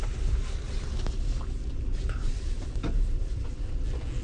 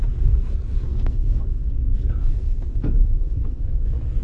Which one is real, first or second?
first